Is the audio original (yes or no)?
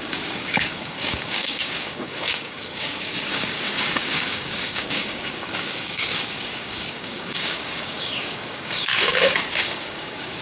no